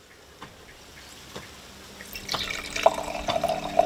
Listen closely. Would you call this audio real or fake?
real